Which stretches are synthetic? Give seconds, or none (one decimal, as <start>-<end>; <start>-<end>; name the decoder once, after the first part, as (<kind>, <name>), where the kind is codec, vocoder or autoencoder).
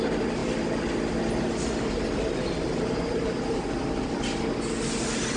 none